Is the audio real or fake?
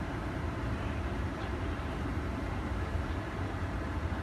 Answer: fake